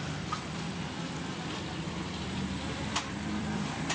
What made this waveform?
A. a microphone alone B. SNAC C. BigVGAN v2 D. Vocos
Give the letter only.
C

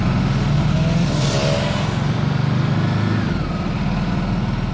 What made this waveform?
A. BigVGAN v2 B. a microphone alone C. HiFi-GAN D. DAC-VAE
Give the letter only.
B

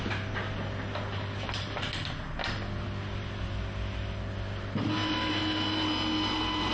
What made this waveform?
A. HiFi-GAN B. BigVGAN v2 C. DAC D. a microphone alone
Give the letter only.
D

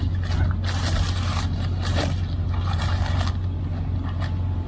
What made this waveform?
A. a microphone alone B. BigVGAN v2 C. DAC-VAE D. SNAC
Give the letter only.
A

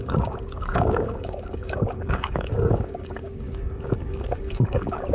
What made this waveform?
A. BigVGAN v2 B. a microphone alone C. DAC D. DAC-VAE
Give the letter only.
C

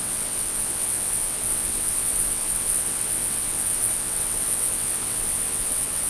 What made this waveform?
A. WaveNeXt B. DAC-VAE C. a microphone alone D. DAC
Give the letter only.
A